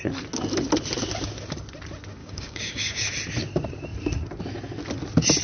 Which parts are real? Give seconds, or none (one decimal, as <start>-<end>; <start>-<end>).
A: 0.0-2.2; 3.1-5.4